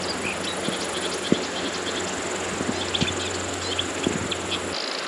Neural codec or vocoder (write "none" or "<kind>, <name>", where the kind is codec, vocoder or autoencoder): none